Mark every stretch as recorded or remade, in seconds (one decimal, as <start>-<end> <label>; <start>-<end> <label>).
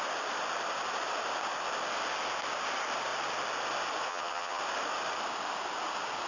0.0-4.1 recorded; 4.1-4.6 remade; 4.6-6.3 recorded